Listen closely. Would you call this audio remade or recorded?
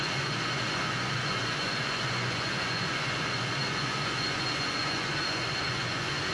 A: remade